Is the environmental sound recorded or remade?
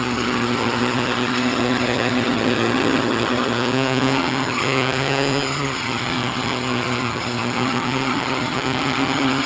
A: remade